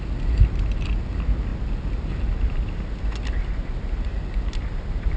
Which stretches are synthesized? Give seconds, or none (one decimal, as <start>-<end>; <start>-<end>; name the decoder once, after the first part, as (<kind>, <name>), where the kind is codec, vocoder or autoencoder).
none